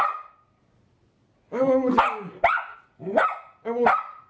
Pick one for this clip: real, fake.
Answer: real